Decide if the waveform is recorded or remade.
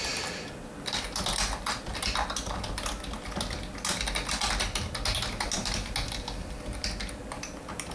recorded